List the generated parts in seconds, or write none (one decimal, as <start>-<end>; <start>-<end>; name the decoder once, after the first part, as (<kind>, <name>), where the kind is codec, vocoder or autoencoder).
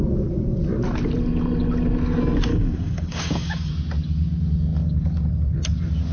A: 2.5-3.7 (codec, DAC)